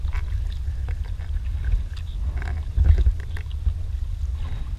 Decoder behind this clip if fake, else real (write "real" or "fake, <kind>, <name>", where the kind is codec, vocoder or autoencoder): real